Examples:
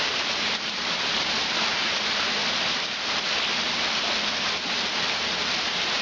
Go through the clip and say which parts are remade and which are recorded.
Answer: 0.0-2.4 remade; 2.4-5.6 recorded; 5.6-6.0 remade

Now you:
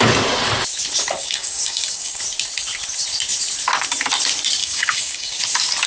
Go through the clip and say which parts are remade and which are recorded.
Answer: 0.0-1.2 recorded; 1.2-2.2 remade; 2.2-4.6 recorded; 4.6-5.4 remade; 5.4-5.9 recorded

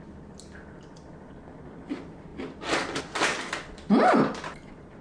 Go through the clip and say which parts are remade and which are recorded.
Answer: 0.0-5.0 recorded

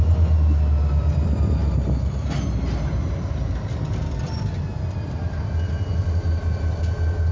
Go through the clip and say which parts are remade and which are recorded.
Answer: 0.0-7.3 recorded